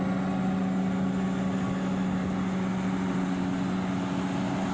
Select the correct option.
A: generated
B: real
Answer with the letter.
B